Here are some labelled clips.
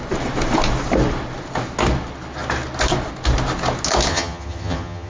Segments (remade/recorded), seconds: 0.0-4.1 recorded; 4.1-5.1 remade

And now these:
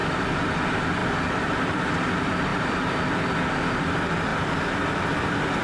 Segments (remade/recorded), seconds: 0.0-1.0 recorded; 1.0-1.8 remade; 1.8-2.5 recorded; 2.5-3.3 remade; 3.3-5.6 recorded